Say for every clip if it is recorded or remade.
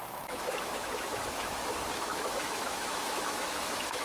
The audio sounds remade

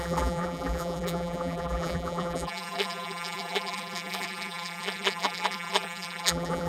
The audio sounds remade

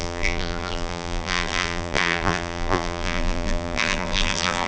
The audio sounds remade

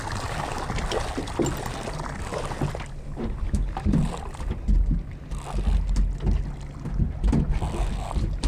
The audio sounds recorded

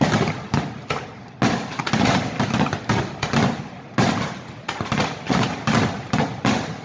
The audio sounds recorded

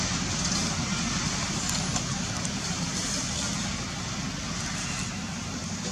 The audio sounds recorded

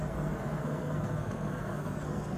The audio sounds remade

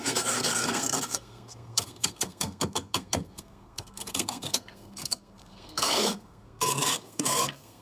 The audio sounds remade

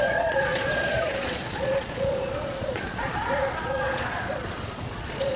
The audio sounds remade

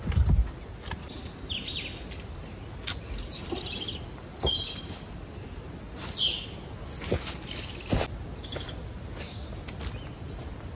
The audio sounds recorded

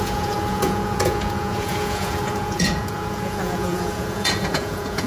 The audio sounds remade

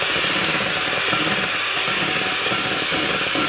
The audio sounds recorded